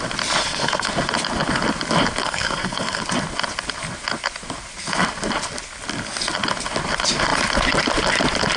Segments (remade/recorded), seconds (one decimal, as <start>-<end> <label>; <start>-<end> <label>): 0.0-0.4 recorded; 0.4-0.9 remade; 0.9-2.2 recorded; 2.2-3.0 remade; 3.0-8.6 recorded